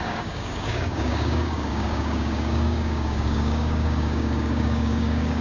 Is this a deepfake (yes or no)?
yes